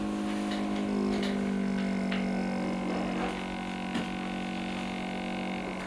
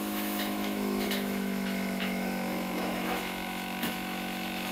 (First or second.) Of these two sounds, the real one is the first